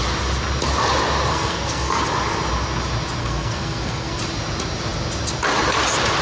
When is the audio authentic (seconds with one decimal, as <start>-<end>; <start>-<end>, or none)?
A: 0.0-1.3; 2.0-3.2; 4.2-6.2